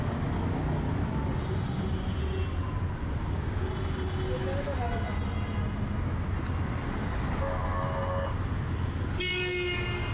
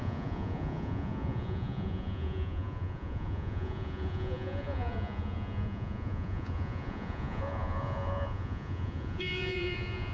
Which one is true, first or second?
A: first